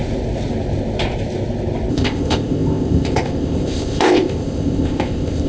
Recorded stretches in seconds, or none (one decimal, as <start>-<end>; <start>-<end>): 0.0-1.9